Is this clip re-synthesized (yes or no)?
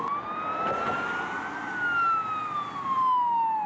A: no